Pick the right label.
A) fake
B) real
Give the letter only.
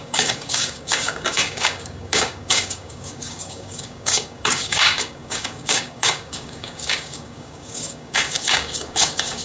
A